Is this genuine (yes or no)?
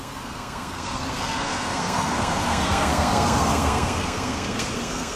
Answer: no